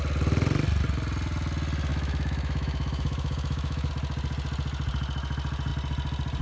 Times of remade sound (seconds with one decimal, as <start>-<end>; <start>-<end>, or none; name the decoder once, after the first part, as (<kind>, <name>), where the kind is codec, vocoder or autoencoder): 1.9-3.9 (autoencoder, DAC-VAE)